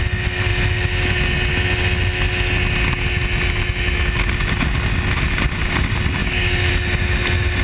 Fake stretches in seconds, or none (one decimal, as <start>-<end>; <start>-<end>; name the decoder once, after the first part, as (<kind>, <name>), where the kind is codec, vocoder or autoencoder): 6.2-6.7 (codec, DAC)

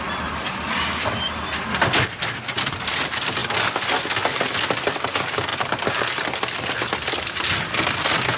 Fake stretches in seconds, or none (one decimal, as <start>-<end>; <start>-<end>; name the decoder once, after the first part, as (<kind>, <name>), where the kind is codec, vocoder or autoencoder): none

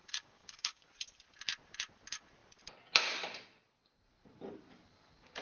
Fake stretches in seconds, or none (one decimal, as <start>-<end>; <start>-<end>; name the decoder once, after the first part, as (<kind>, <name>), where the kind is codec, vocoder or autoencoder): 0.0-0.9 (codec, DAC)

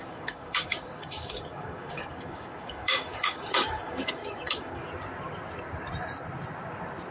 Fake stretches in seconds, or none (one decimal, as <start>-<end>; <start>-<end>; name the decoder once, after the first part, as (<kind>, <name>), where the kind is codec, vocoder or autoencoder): 0.0-4.8 (codec, DAC)

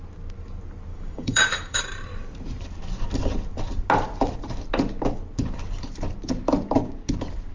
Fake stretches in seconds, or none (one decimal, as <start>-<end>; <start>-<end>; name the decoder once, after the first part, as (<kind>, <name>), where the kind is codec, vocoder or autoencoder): 0.9-1.8 (codec, DAC)